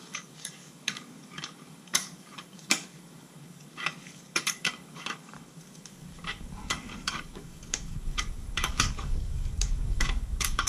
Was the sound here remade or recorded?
remade